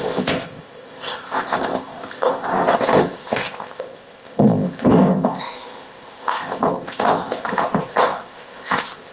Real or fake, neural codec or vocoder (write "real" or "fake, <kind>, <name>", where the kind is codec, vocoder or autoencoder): fake, codec, ZipCodec